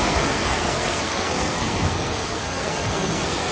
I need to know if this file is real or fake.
fake